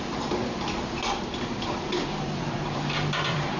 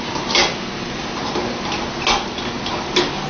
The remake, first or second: first